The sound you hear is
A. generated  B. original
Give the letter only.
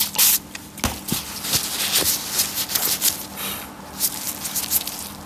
B